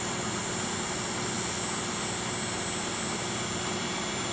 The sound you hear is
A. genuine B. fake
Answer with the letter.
A